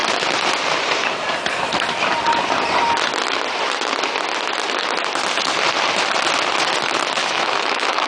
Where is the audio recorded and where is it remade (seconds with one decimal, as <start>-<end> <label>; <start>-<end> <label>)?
0.0-7.2 recorded; 7.2-8.1 remade